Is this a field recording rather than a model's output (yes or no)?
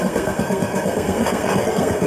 no